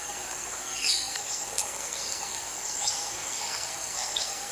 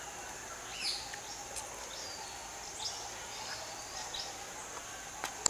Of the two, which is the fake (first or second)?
first